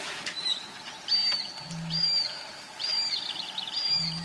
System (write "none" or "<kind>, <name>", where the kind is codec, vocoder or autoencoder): vocoder, BigVGAN v2